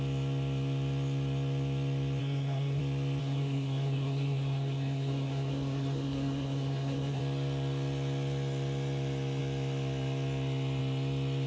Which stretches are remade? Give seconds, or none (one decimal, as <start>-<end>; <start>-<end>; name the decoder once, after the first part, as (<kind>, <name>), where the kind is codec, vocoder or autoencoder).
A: 2.2-2.8 (codec, SNAC); 3.2-7.2